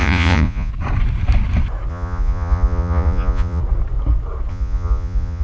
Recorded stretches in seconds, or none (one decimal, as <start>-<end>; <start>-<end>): 0.7-1.9; 3.6-4.5